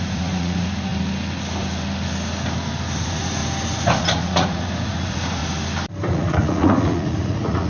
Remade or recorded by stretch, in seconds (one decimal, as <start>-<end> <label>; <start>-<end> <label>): 0.0-0.9 remade; 0.9-3.0 recorded; 3.0-3.4 remade; 3.4-4.0 recorded; 4.0-5.4 remade; 5.4-6.1 recorded; 6.1-7.7 remade